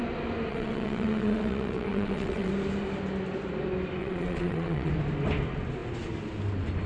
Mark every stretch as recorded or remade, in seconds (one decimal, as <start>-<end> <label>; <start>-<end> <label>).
0.0-0.5 recorded; 0.5-2.5 remade; 2.5-4.0 recorded; 4.0-4.9 remade; 4.9-6.9 recorded